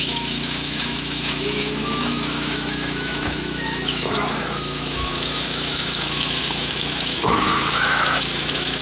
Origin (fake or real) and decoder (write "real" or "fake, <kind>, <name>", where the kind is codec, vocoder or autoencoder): fake, autoencoder, DAC-VAE